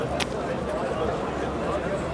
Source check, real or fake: fake